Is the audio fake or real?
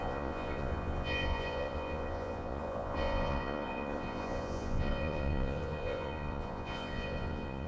fake